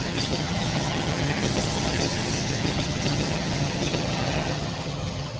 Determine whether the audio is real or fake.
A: fake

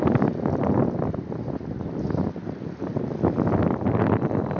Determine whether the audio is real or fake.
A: real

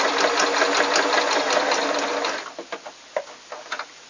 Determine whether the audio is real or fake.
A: real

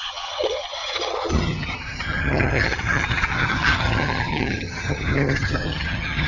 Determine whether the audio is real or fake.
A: fake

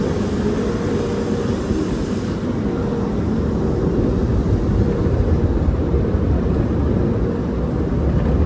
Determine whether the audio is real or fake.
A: real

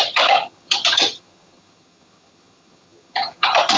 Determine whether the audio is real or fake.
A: fake